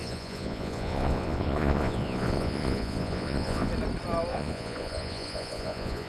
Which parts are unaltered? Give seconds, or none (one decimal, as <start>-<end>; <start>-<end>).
3.7-4.3